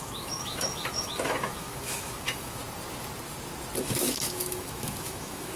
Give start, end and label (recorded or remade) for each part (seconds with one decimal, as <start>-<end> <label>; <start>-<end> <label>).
0.0-2.6 remade; 2.6-3.8 recorded; 3.8-5.6 remade